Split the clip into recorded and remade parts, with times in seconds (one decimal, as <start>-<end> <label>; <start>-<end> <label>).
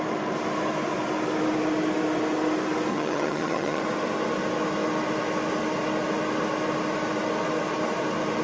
0.0-2.9 recorded; 2.9-3.8 remade; 3.8-8.4 recorded